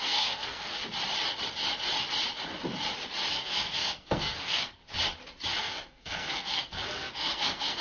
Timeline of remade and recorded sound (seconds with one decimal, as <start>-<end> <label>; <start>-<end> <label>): 0.0-0.8 remade; 0.8-3.3 recorded; 3.3-4.8 remade; 4.8-5.6 recorded; 5.6-7.8 remade

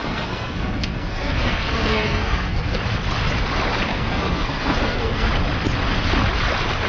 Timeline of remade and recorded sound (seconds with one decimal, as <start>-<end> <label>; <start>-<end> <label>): 0.0-2.8 remade; 2.8-3.9 recorded; 3.9-5.3 remade; 5.3-6.9 recorded

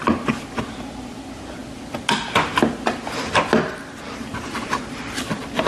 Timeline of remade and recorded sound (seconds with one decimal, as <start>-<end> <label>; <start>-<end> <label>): 0.0-5.7 recorded

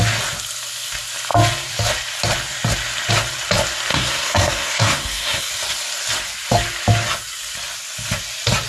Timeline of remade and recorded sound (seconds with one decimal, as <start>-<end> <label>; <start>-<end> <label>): 0.0-3.9 recorded; 3.9-5.5 remade; 5.5-8.7 recorded

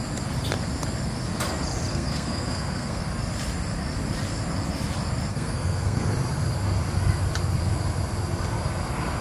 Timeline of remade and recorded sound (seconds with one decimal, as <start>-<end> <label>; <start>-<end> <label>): 0.0-1.9 recorded; 1.9-3.0 remade; 3.0-5.3 recorded; 5.3-6.1 remade; 6.1-9.2 recorded

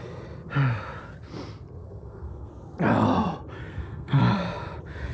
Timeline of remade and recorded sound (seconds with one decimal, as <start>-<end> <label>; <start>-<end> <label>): 0.0-1.8 recorded; 1.8-2.5 remade; 2.5-3.7 recorded; 3.7-4.2 remade; 4.2-5.1 recorded

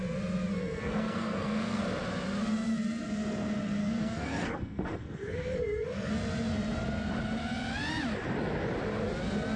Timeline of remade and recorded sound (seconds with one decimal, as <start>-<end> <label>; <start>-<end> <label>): 0.0-0.5 recorded; 0.5-1.8 remade; 1.8-3.8 recorded; 3.8-6.1 remade; 6.1-9.6 recorded